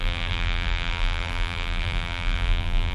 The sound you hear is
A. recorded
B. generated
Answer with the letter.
B